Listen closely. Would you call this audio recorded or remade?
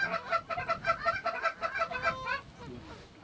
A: recorded